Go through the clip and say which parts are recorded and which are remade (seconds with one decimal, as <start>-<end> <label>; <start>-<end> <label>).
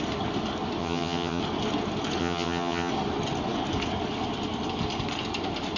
0.0-0.8 recorded; 0.8-1.4 remade; 1.4-2.2 recorded; 2.2-2.9 remade; 2.9-5.8 recorded